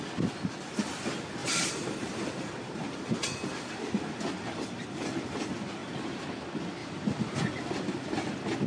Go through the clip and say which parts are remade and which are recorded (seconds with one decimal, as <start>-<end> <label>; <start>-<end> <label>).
0.0-1.4 recorded; 1.4-3.1 remade; 3.1-6.8 recorded; 6.8-7.4 remade; 7.4-8.7 recorded